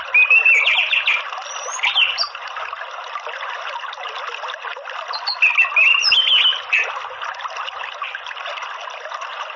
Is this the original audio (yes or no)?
yes